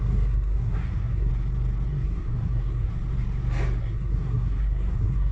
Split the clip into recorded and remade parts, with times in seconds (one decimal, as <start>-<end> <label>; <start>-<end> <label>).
0.0-1.3 remade; 1.3-1.9 recorded; 1.9-2.9 remade; 2.9-3.8 recorded; 3.8-5.3 remade